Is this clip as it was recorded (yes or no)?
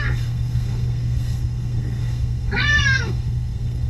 no